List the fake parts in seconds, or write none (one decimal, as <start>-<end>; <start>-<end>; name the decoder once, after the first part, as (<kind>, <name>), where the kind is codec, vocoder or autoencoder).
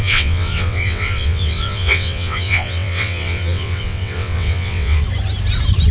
0.0-5.0 (vocoder, WaveNeXt)